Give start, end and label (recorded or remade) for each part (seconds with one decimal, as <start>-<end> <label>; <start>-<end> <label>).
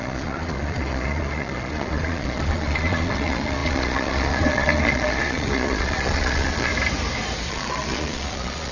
0.0-6.7 remade; 6.7-7.5 recorded; 7.5-8.7 remade